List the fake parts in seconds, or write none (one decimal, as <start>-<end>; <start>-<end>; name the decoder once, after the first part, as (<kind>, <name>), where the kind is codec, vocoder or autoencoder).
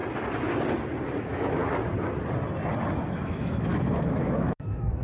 1.2-1.6 (autoencoder, DAC-VAE); 3.2-5.0